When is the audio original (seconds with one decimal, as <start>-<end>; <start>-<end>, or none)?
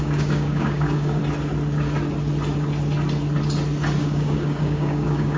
1.2-4.0